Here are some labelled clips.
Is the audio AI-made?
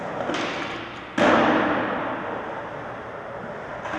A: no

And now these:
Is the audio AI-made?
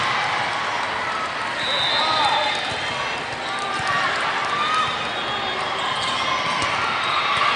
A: no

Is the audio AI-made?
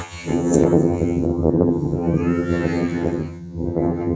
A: yes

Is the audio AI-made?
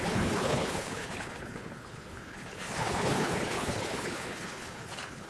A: yes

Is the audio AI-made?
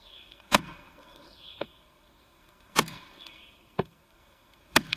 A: yes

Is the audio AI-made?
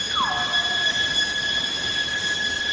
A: no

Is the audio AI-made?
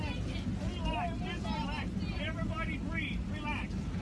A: no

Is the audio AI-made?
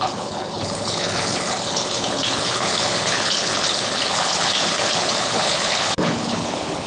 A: yes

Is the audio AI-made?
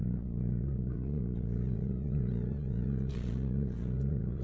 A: yes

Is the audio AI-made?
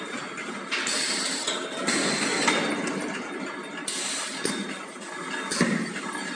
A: no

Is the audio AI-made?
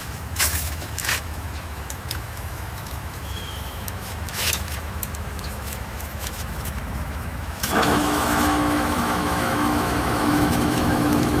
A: yes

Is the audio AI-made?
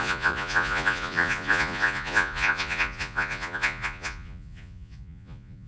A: yes